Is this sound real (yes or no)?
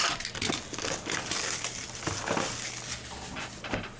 yes